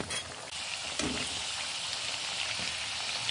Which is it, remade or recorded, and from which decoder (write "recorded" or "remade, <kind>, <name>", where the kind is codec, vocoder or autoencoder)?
recorded